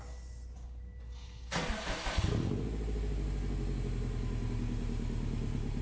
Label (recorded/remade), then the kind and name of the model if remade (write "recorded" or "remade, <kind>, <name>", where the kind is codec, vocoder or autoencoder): recorded